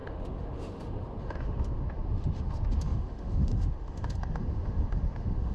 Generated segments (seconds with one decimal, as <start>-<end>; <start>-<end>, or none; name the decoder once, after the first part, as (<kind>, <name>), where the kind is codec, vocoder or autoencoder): 0.0-5.5 (autoencoder, DAC-VAE)

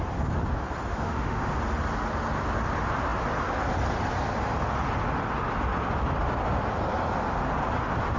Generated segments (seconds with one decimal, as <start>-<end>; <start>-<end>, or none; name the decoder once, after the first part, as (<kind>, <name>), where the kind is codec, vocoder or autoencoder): 0.9-1.5 (autoencoder, DAC-VAE)

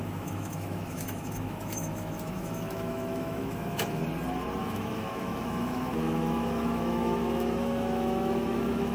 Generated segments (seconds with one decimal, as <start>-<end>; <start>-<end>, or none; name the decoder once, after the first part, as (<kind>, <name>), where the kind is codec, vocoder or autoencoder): 0.0-4.0 (autoencoder, DAC-VAE); 4.6-8.9

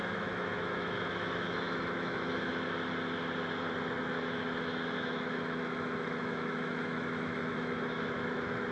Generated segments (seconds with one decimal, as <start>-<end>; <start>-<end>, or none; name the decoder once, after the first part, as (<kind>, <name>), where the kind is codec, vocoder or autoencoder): 0.0-2.5 (autoencoder, DAC-VAE); 4.0-8.7

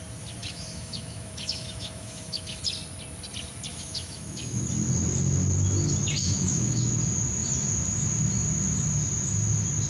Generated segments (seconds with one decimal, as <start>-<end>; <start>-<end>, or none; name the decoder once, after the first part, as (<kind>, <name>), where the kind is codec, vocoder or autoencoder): 0.4-2.6 (autoencoder, DAC-VAE); 3.7-4.6; 6.2-6.9

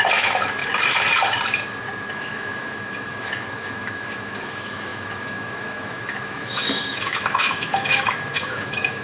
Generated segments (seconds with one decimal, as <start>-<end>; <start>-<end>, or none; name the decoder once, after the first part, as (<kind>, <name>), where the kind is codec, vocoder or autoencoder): 0.0-0.6 (autoencoder, DAC-VAE); 2.1-9.0

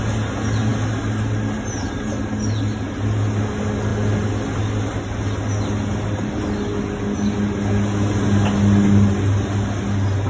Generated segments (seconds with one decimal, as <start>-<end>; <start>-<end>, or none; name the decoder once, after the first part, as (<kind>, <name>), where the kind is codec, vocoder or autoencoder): none

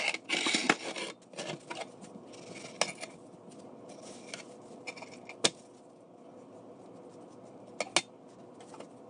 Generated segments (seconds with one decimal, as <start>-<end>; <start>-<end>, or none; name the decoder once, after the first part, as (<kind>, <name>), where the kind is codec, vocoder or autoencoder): none